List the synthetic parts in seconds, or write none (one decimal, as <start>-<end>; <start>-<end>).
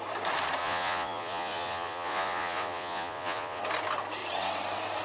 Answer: 0.6-3.6